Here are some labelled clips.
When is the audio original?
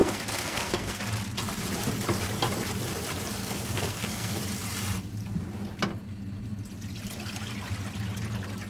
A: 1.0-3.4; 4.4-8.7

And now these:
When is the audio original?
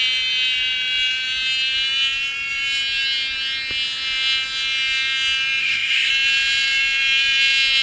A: 0.0-5.6; 6.1-7.8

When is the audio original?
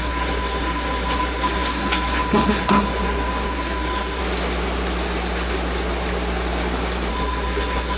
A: 4.2-7.1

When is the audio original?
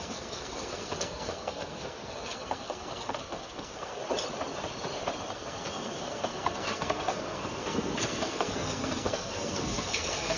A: 4.0-5.3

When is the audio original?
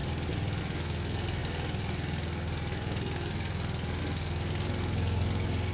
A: 0.0-0.6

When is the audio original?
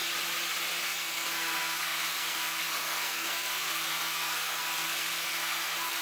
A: 0.0-0.8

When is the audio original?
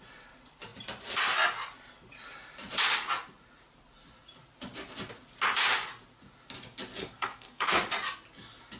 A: 0.0-7.0; 7.7-8.8